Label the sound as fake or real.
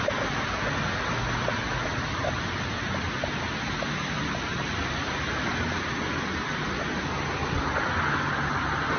real